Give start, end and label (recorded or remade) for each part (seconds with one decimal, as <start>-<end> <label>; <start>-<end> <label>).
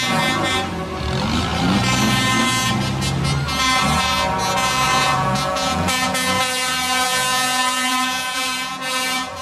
0.0-4.9 recorded; 4.9-9.4 remade